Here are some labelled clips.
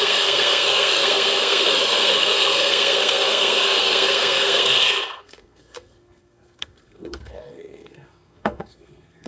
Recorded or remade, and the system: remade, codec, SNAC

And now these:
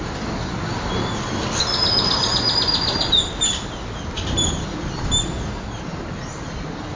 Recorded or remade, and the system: recorded